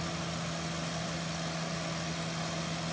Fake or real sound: real